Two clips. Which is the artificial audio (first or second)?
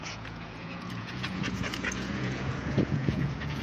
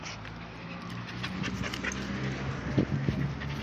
first